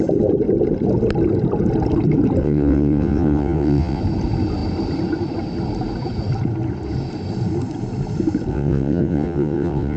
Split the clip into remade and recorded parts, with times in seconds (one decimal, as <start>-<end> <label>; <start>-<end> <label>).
0.0-2.4 recorded; 2.4-4.0 remade; 4.0-8.5 recorded; 8.5-10.0 remade